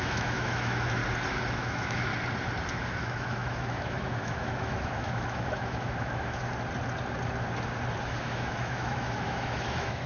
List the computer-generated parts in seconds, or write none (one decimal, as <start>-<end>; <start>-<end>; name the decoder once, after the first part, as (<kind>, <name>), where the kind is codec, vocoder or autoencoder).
0.0-1.0 (autoencoder, DAC-VAE); 1.5-2.1; 2.7-6.4; 8.2-10.1